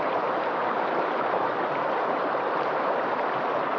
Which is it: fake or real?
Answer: fake